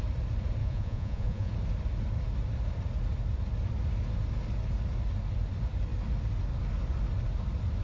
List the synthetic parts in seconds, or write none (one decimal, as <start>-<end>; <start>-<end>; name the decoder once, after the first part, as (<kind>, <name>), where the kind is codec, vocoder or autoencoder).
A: 0.6-1.5 (vocoder, Vocos)